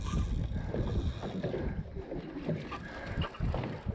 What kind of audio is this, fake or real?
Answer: real